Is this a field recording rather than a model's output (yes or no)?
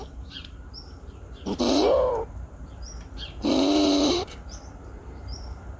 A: no